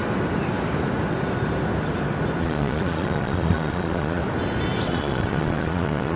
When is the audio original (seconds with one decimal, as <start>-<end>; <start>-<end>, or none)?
0.0-2.4; 4.2-4.9